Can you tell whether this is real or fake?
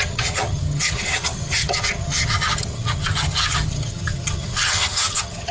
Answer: fake